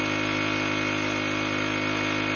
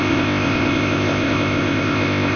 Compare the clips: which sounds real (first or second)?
first